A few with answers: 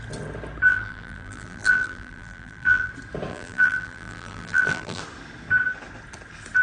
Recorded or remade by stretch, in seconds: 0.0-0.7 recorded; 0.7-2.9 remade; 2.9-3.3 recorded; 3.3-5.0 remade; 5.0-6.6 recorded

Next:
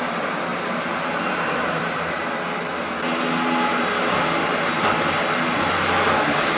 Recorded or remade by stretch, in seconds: 0.0-0.5 recorded; 0.5-2.1 remade; 2.1-3.7 recorded; 3.7-4.7 remade; 4.7-6.6 recorded

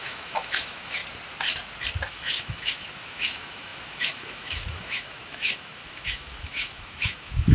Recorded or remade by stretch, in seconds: 0.0-1.0 remade; 1.0-2.1 recorded; 2.1-7.5 remade